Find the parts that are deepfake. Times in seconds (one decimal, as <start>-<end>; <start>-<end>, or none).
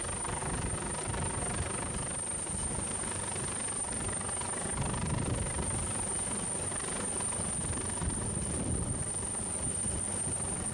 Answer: none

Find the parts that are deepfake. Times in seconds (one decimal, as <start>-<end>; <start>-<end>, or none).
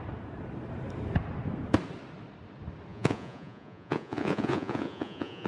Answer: 2.9-5.5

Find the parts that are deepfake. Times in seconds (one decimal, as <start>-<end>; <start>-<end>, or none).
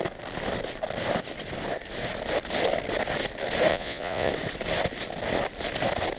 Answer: 3.7-4.3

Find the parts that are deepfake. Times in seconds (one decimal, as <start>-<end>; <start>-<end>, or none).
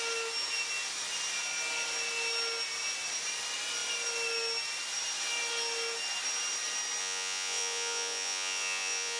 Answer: 7.0-9.2